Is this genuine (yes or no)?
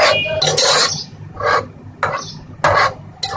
yes